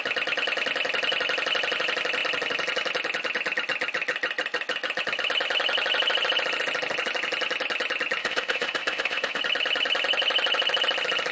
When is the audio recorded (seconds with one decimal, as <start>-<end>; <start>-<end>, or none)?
0.0-8.2; 9.4-11.3